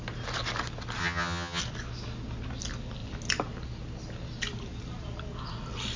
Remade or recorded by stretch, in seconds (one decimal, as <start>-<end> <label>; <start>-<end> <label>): 0.0-1.0 recorded; 1.0-1.6 remade; 1.6-6.0 recorded